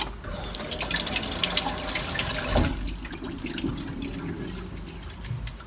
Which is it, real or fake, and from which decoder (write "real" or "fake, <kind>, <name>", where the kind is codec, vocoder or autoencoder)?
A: real